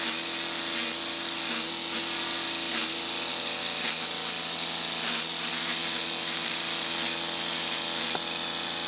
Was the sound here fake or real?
real